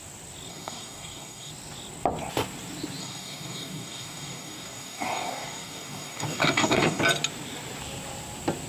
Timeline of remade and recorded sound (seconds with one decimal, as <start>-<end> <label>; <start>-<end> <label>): 0.0-0.5 recorded; 0.5-1.5 remade; 1.5-3.0 recorded; 3.0-7.0 remade; 7.0-8.7 recorded